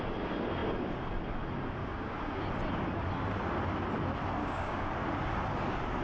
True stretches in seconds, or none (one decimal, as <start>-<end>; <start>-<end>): 0.0-1.8; 2.4-4.4; 4.9-6.0